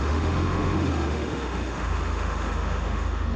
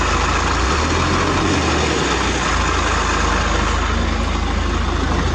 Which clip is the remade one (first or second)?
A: first